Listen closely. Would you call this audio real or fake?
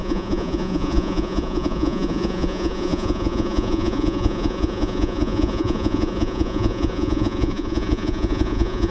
fake